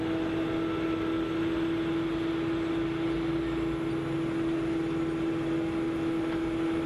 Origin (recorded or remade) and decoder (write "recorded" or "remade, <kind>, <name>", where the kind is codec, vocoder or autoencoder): recorded